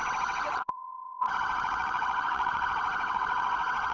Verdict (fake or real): fake